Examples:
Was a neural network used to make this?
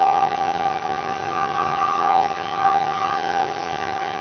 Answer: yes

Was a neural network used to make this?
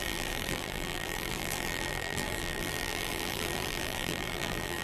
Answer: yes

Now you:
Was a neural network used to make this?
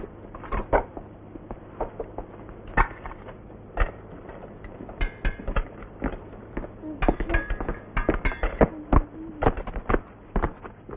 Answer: no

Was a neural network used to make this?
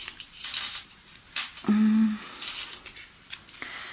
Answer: no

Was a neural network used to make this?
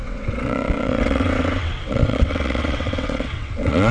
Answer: yes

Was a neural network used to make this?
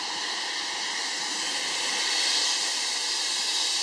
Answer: no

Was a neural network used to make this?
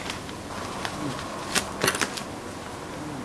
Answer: no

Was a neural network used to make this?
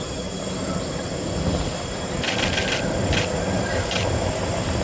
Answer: no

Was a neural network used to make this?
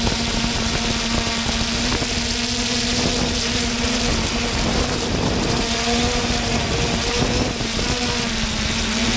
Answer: no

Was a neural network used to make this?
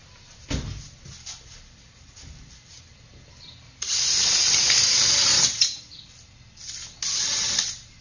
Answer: no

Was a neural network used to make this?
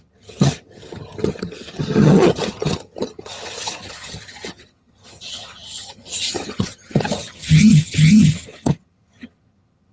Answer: yes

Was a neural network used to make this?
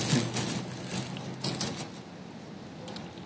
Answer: no